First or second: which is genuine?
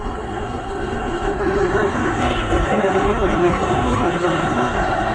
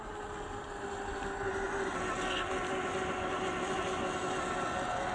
second